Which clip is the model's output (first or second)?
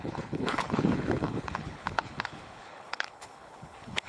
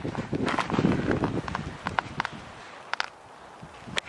first